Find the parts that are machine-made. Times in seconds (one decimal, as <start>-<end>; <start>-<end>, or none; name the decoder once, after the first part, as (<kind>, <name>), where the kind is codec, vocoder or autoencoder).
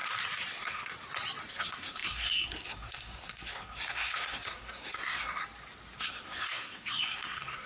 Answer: 0.5-0.9 (codec, SNAC); 1.5-5.4; 6.0-7.7